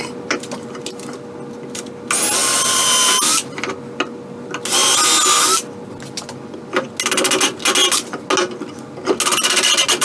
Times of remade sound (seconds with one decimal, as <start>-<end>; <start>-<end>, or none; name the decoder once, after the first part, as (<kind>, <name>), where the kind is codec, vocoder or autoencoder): none